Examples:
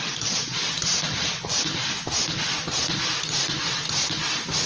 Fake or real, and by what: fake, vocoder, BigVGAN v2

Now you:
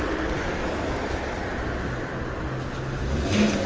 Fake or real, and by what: real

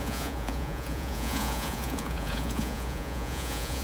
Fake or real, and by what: fake, vocoder, Vocos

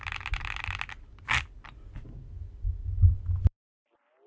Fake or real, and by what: real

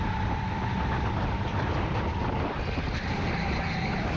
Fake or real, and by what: real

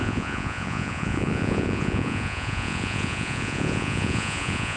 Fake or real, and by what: fake, vocoder, Vocos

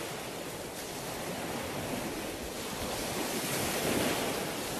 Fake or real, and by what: real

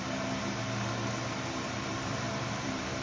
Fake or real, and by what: fake, vocoder, BigVGAN v2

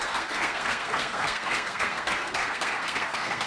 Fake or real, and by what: fake, codec, SNAC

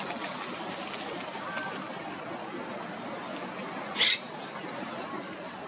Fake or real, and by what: real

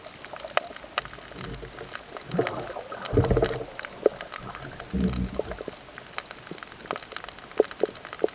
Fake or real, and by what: real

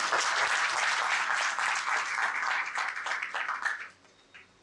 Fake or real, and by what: real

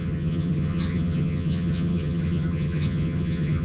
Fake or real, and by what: fake, vocoder, HiFi-GAN